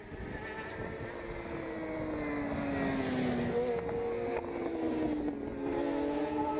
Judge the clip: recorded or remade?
recorded